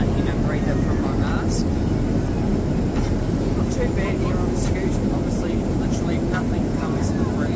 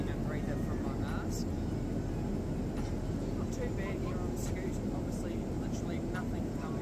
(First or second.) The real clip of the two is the second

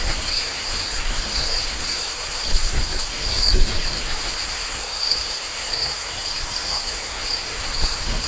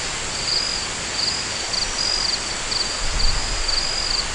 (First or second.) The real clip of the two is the second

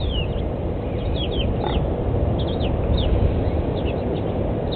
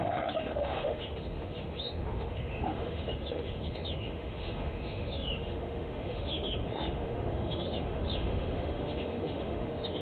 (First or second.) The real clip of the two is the first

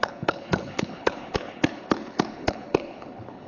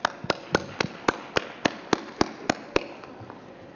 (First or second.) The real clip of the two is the second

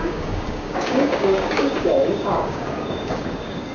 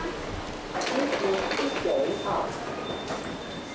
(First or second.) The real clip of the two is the second